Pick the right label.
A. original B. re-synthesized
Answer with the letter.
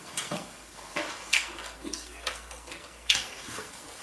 B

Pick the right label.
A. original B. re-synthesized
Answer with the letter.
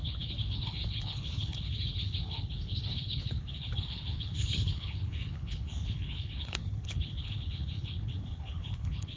B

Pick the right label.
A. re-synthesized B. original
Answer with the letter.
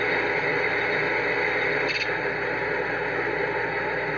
B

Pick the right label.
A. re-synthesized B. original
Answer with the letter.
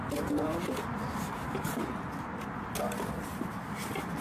B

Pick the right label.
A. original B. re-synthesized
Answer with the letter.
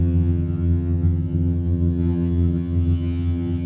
B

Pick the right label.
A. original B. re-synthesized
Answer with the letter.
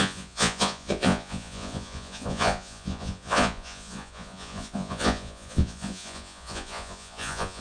B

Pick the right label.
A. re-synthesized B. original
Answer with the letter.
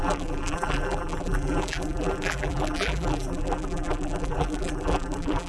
A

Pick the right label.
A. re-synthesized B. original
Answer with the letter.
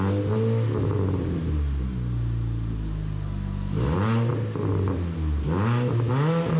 B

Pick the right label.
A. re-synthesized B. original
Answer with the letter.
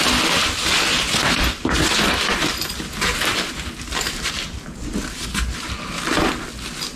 B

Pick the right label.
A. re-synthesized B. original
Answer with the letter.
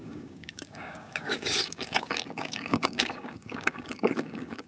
A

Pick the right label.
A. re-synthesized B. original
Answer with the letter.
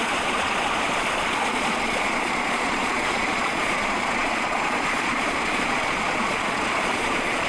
A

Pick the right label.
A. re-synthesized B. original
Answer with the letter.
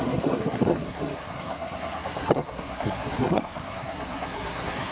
A